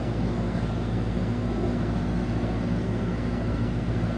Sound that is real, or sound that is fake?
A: fake